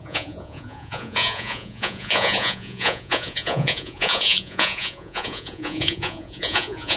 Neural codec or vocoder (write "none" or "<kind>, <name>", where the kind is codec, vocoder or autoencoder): vocoder, Vocos